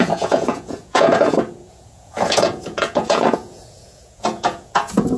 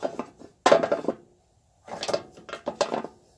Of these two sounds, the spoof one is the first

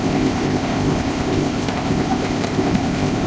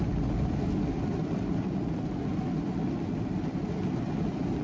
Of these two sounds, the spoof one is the first